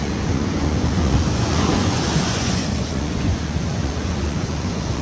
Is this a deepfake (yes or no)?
yes